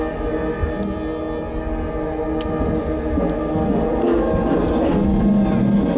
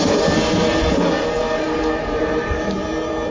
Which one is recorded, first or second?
first